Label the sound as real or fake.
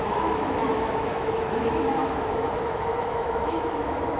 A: fake